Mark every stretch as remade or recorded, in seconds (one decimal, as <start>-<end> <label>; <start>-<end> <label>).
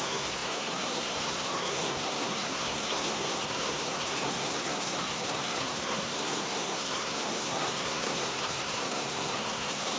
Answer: 0.0-10.0 remade